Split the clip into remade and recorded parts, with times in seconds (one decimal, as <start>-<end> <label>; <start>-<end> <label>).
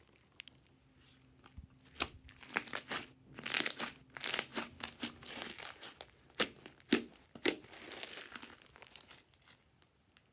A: 0.0-10.3 recorded